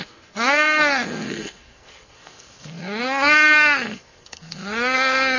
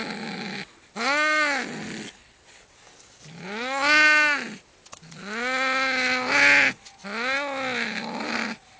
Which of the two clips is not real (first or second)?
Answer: first